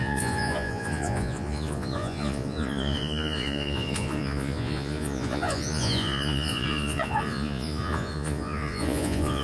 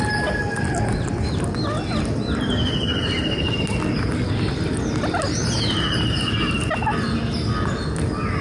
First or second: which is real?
second